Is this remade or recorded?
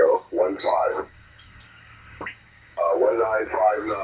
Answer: remade